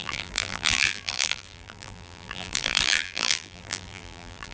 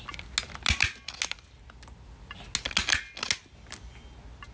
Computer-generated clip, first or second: first